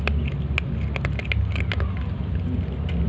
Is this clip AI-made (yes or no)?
no